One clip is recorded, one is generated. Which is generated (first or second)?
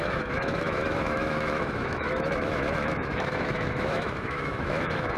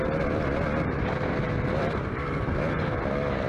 first